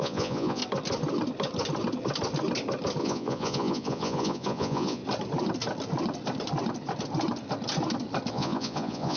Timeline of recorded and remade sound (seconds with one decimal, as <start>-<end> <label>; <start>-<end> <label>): 0.0-0.6 remade; 0.6-3.0 recorded; 3.0-5.0 remade; 5.0-8.3 recorded; 8.3-9.2 remade